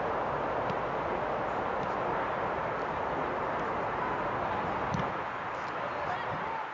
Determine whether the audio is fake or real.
real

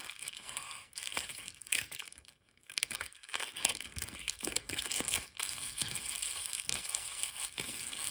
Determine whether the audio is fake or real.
fake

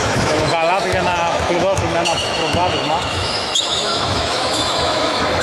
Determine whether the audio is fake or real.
fake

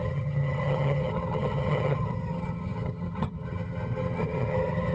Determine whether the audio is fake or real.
fake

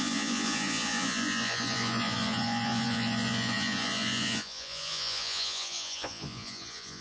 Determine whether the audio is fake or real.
fake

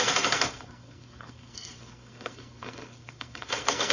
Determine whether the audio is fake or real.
fake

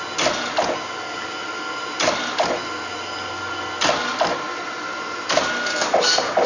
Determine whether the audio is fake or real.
real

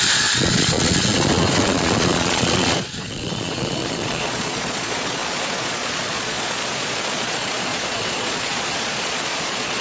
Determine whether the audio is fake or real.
fake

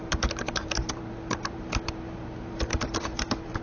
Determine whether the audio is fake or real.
fake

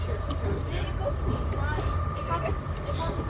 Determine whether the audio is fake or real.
real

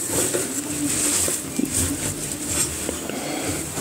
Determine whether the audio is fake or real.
real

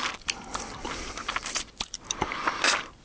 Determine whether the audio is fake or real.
fake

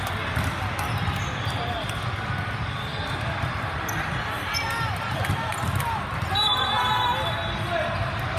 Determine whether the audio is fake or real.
real